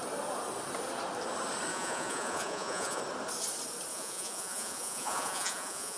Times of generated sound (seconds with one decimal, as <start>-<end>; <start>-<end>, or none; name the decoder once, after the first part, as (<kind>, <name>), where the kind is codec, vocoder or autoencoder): 1.7-3.0 (vocoder, Vocos); 3.9-6.0